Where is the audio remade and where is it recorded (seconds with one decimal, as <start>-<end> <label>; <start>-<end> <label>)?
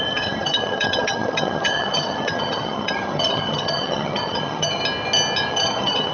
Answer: 0.0-4.8 remade; 4.8-5.5 recorded; 5.5-6.1 remade